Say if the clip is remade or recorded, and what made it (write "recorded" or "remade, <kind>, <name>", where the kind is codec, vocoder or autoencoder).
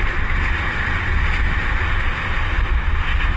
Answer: recorded